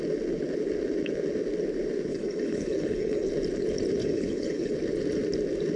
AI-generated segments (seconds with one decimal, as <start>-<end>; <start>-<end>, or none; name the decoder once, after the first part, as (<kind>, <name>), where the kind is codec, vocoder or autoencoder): 2.1-3.3 (codec, HILCodec); 4.0-4.7